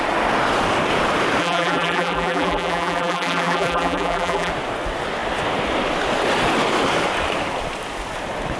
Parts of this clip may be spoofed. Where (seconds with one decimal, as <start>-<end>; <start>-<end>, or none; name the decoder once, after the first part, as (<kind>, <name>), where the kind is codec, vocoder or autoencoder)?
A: 1.4-4.5 (vocoder, BigVGAN v2)